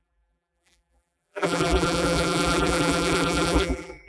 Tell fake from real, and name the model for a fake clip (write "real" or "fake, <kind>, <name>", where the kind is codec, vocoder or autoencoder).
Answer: fake, vocoder, BigVGAN v2